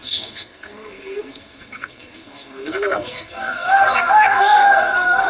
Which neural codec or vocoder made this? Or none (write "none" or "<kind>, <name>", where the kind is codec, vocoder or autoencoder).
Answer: codec, SNAC